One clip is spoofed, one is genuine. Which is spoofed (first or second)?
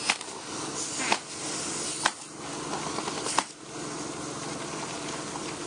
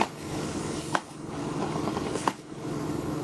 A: second